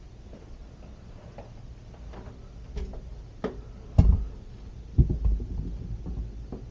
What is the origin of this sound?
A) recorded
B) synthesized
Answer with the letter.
A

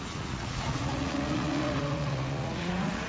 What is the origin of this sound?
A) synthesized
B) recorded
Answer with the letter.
A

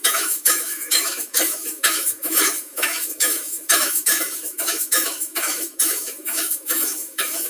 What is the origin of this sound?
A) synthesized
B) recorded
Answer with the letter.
A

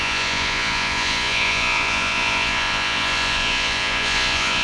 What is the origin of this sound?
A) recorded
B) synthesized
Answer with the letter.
B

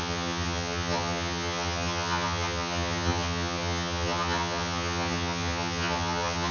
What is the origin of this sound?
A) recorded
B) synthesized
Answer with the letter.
B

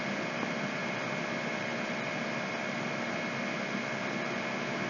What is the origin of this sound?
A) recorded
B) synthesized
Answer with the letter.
A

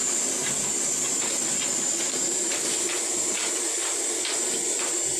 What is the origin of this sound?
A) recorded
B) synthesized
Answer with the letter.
A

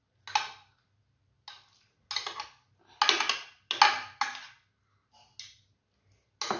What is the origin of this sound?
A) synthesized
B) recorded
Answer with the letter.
B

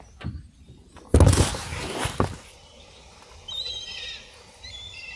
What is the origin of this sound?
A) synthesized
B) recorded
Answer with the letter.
B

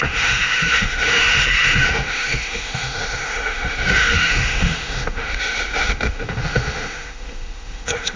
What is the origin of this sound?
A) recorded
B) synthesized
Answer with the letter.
B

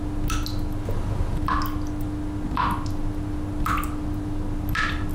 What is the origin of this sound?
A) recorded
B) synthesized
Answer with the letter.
A